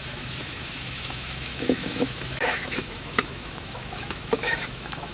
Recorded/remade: remade